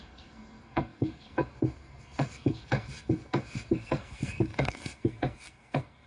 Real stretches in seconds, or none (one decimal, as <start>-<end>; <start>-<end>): none